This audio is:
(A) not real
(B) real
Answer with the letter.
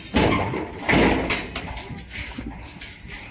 B